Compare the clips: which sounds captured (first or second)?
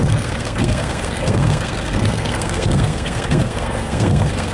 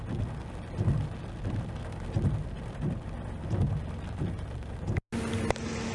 second